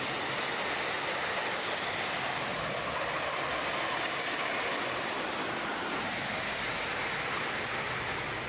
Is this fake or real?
real